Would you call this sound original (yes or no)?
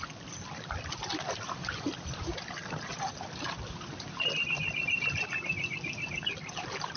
yes